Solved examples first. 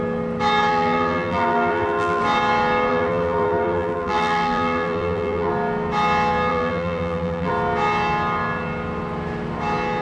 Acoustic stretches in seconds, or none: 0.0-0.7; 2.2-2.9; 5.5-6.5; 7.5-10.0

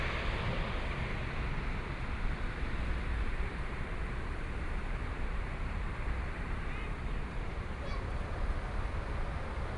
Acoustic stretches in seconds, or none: 0.0-3.1; 7.8-9.8

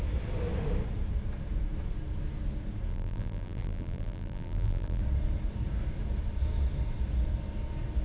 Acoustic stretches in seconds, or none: 0.0-2.9; 5.0-8.0

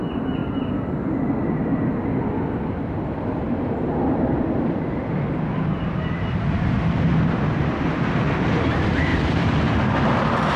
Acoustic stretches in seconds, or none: 0.0-0.4; 4.8-9.1; 9.6-10.6